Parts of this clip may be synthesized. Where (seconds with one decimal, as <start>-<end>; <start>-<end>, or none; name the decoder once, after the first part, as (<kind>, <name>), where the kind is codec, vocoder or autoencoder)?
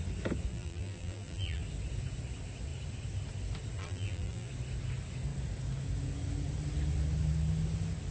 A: 0.5-1.6 (vocoder, BigVGAN v2); 3.8-4.5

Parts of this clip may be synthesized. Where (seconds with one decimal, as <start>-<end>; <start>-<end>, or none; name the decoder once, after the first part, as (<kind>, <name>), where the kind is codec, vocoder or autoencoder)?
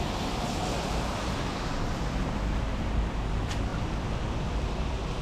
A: none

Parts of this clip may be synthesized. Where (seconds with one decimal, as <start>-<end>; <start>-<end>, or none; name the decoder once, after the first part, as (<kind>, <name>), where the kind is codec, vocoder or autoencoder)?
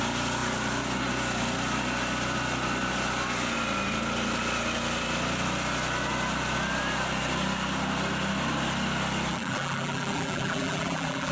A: 9.3-11.3 (vocoder, BigVGAN v2)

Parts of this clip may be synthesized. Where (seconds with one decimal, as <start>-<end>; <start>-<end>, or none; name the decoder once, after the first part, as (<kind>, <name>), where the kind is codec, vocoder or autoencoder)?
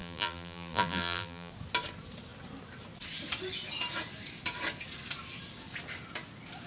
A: 0.0-1.5 (vocoder, BigVGAN v2)